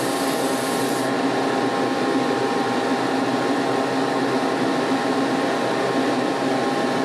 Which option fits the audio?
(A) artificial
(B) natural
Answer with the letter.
B